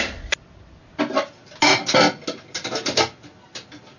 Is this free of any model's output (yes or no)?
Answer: yes